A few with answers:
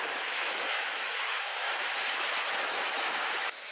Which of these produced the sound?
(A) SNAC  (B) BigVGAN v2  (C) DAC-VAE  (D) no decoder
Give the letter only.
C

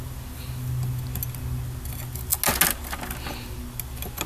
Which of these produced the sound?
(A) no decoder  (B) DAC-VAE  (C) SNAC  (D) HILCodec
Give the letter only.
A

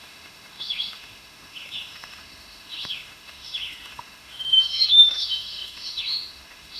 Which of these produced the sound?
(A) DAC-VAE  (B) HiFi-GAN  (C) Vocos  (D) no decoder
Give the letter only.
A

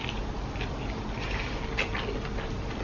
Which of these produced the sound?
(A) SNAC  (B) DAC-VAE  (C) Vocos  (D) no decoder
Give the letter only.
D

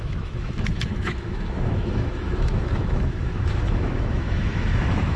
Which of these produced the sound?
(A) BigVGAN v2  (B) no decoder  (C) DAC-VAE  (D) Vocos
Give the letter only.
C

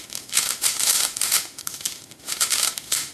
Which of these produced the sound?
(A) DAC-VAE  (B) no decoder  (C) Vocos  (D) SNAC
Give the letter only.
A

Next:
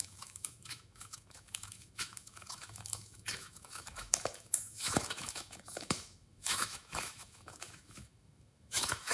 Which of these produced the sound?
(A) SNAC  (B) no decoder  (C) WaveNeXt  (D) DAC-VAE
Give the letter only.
D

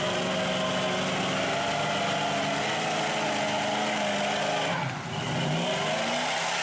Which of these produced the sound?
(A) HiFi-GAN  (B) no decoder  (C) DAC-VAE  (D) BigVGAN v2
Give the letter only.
B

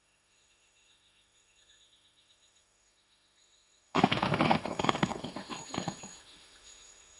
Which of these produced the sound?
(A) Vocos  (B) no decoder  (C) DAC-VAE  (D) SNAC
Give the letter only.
C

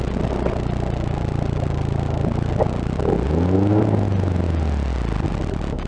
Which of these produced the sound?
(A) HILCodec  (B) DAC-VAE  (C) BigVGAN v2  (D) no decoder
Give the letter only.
D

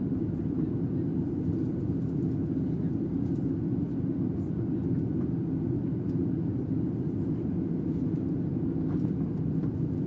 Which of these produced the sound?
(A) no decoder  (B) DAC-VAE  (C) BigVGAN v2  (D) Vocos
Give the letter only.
A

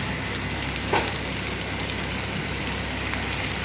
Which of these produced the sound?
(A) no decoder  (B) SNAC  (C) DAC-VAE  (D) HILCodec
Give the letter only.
A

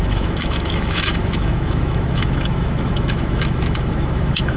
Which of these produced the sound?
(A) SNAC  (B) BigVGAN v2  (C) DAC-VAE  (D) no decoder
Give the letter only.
C